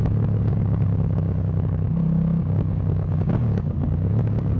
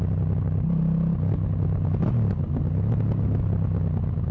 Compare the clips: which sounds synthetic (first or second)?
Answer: first